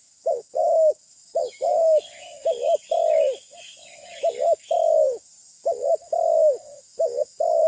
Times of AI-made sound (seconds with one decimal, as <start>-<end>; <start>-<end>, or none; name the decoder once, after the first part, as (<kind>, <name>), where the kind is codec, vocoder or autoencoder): 0.0-7.7 (autoencoder, DAC-VAE)